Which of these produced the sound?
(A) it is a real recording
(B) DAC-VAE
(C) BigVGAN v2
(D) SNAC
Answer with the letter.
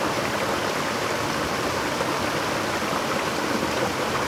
A